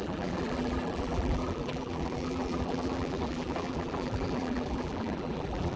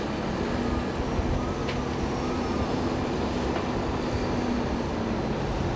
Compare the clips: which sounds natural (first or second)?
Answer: second